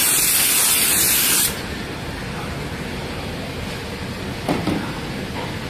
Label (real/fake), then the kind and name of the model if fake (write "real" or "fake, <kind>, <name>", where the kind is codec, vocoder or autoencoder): real